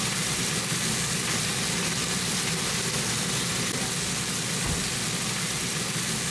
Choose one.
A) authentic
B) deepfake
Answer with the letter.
A